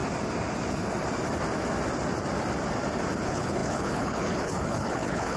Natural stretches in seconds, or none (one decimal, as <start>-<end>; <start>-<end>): 0.0-3.2